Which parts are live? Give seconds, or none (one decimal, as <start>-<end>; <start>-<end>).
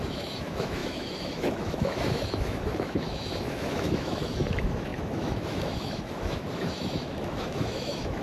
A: none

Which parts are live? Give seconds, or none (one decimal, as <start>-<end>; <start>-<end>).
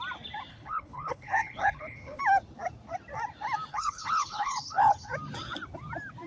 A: 0.0-0.5; 2.2-3.7; 5.1-6.3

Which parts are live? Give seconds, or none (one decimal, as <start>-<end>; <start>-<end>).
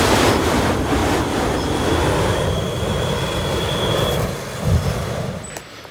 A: 0.0-5.9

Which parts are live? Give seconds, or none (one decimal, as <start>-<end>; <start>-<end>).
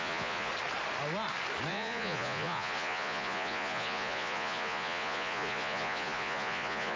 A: 0.5-1.7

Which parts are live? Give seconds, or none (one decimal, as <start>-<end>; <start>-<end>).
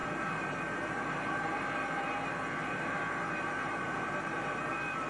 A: none